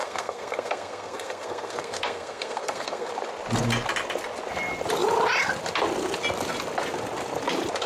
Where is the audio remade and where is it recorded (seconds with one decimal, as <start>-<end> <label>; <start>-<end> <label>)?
0.0-3.1 remade; 3.1-7.9 recorded